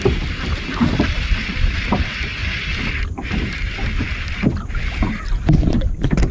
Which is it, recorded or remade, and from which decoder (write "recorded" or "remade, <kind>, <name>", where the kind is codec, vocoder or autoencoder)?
recorded